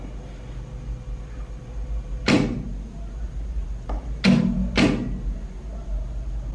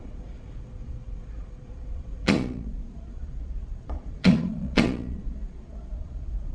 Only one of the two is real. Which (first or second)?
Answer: first